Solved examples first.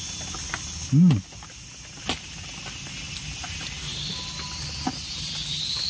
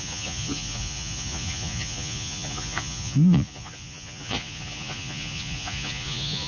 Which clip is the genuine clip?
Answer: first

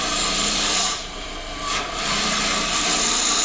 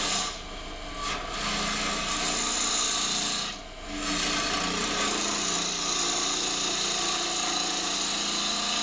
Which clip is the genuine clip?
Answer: second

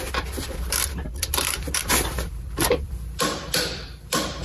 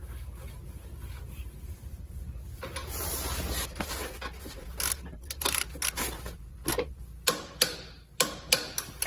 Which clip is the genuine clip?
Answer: second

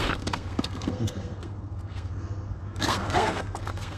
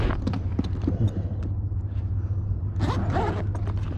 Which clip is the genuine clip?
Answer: second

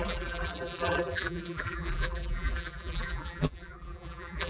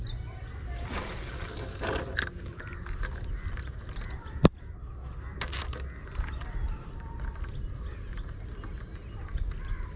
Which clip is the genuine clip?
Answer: second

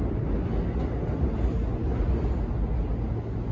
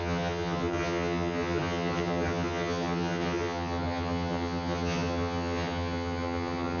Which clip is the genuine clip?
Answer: first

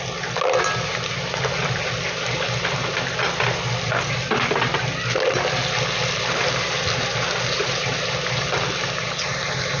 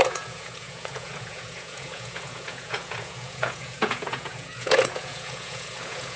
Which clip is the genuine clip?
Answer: first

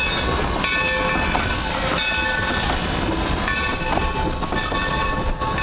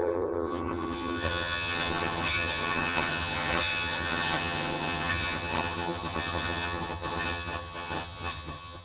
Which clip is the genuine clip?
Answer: first